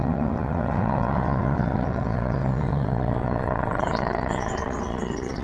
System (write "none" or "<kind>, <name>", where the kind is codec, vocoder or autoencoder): vocoder, WaveNeXt